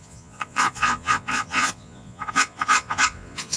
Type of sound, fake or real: fake